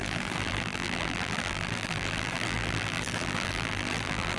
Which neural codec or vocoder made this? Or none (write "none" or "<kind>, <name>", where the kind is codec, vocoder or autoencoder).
vocoder, BigVGAN v2